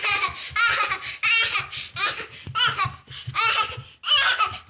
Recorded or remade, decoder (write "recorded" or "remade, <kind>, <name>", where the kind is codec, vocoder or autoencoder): recorded